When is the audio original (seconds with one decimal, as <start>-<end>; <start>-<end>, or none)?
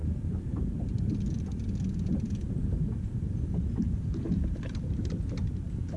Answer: 0.8-2.1; 5.1-6.0